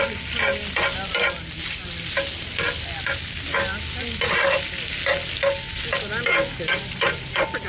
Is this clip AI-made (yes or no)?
no